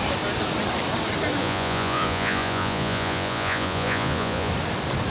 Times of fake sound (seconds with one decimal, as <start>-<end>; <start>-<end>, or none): 1.4-4.5